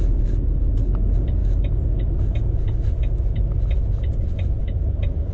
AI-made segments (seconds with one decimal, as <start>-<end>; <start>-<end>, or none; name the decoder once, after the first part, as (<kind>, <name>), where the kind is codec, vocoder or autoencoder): none